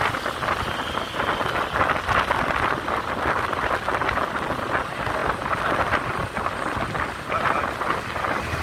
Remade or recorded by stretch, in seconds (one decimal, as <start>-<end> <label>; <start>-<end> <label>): 0.0-8.6 recorded